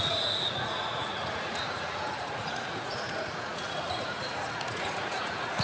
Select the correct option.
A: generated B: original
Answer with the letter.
A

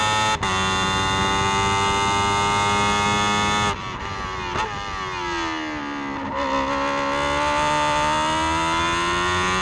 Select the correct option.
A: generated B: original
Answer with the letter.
B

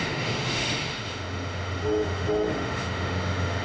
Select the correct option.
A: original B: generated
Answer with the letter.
B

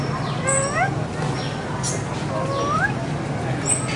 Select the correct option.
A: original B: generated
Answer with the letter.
A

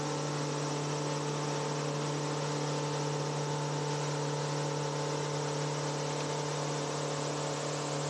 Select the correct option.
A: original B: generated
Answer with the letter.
A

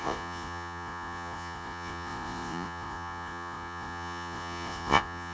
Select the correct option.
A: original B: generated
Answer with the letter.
B